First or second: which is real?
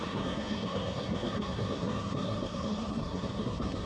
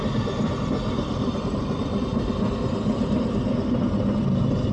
second